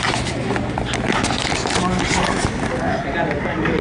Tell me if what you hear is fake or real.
real